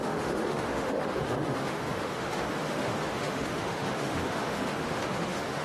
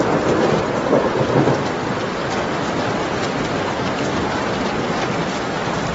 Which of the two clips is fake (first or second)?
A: first